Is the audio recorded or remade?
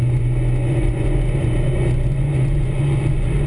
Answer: remade